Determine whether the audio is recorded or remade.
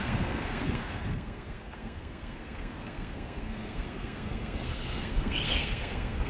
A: remade